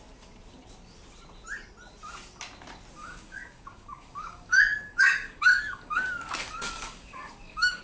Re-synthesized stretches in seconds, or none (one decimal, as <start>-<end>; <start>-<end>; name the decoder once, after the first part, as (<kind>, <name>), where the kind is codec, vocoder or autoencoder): 3.0-7.8 (codec, DAC)